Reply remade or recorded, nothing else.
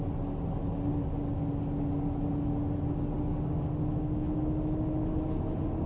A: recorded